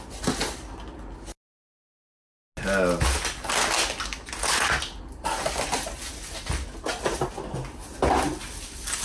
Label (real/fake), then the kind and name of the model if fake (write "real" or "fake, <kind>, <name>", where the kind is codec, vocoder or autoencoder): real